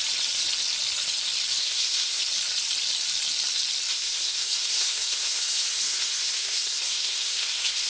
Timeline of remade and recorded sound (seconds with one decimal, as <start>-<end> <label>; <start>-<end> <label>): 0.0-1.6 recorded; 1.6-2.2 remade; 2.2-3.9 recorded; 3.9-7.9 remade